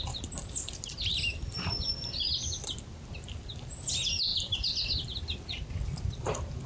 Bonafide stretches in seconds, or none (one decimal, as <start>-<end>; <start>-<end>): 0.0-6.7